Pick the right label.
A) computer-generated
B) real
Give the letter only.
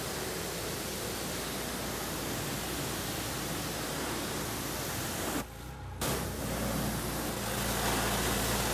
B